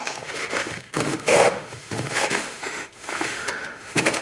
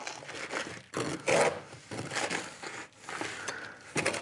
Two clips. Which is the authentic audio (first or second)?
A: second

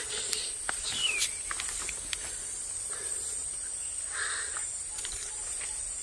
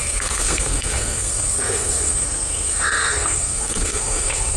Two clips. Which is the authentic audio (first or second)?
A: first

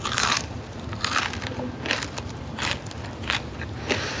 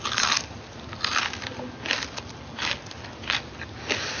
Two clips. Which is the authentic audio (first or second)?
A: second